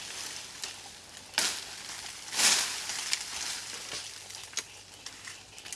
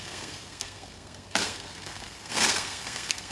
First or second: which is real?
first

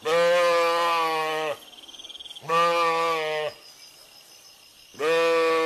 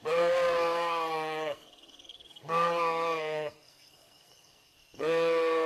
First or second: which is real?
first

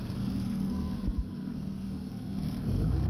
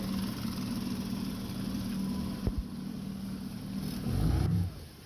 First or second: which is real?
second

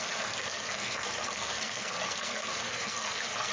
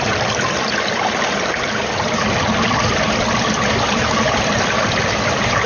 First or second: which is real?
second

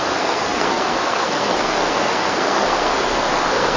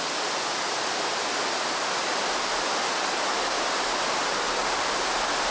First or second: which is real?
second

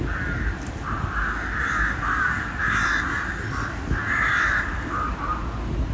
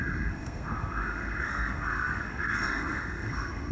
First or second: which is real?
first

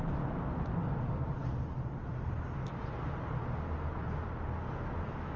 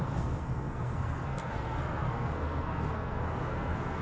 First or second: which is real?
first